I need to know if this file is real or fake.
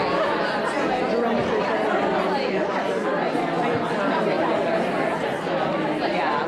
real